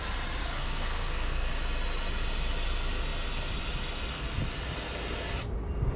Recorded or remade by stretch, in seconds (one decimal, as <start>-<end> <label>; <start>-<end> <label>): 0.0-0.4 recorded; 0.4-1.5 remade; 1.5-6.0 recorded